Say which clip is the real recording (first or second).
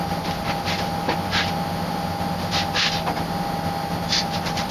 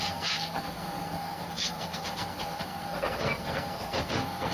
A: first